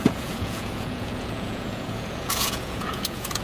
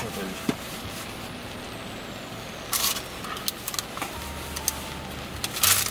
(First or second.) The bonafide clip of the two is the second